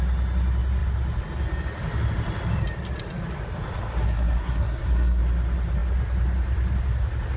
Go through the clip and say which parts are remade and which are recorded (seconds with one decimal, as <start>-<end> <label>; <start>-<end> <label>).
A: 0.0-4.0 recorded; 4.0-5.2 remade; 5.2-7.4 recorded